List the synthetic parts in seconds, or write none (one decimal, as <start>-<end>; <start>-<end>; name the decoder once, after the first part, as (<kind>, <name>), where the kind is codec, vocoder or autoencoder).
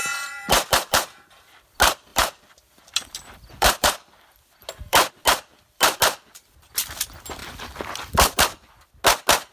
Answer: 0.0-1.7 (vocoder, BigVGAN v2); 2.1-5.1; 5.5-6.0; 7.4-8.7